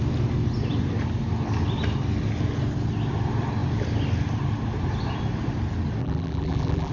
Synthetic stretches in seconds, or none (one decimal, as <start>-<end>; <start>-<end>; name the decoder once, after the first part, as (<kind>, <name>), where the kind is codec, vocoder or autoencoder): 6.0-6.9 (vocoder, BigVGAN v2)